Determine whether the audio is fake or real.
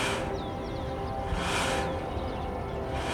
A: real